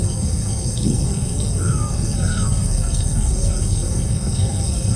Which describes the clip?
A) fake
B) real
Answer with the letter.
A